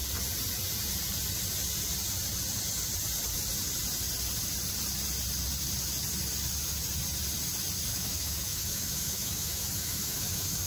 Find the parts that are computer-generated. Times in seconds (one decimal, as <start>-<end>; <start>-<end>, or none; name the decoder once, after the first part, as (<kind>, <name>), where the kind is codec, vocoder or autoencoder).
7.9-10.7 (autoencoder, DAC-VAE)